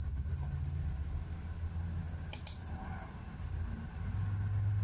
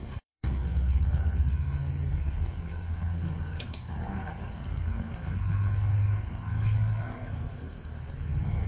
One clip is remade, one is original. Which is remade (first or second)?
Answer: second